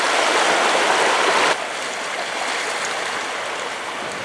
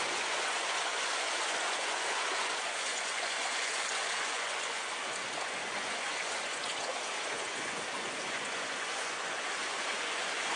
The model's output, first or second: second